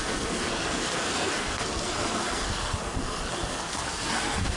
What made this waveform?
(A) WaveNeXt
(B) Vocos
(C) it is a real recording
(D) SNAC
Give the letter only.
D